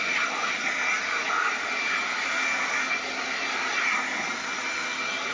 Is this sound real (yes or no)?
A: yes